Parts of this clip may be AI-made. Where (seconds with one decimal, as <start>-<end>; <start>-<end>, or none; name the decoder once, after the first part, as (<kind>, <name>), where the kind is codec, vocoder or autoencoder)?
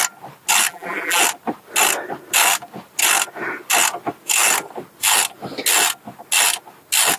0.7-1.2 (vocoder, BigVGAN v2)